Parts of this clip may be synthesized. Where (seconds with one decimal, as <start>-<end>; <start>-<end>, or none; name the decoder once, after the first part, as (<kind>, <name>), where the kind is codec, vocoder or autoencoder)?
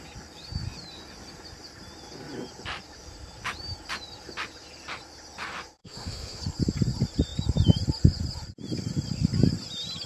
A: 5.8-6.4 (autoencoder, DAC-VAE)